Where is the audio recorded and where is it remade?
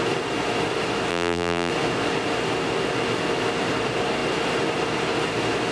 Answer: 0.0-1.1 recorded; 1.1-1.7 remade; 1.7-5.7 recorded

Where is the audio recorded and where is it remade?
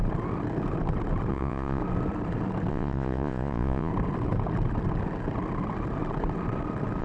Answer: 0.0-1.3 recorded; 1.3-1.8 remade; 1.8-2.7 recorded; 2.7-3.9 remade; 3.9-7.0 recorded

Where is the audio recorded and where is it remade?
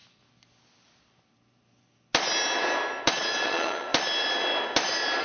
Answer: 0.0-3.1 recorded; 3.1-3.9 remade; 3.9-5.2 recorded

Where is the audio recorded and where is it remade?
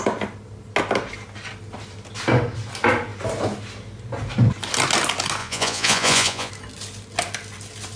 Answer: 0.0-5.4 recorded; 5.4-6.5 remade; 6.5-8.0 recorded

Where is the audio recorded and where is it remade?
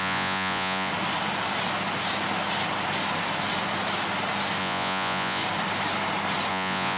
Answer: 0.0-0.9 remade; 0.9-4.6 recorded; 4.6-5.4 remade; 5.4-6.5 recorded; 6.5-7.0 remade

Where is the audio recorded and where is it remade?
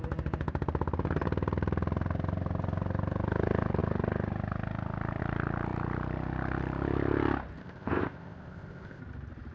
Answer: 0.0-7.6 recorded; 7.6-9.0 remade; 9.0-9.5 recorded